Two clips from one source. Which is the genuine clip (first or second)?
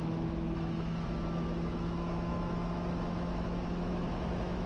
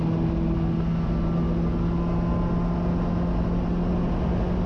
second